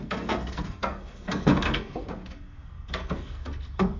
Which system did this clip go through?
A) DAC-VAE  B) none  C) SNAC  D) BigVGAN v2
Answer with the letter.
C